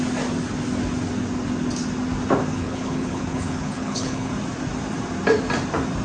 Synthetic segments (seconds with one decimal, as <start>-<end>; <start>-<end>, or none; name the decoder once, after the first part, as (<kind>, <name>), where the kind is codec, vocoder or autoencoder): 2.5-4.3 (codec, HILCodec)